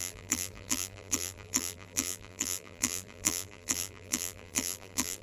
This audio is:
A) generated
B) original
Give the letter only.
A